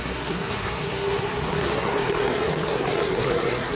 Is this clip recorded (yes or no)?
no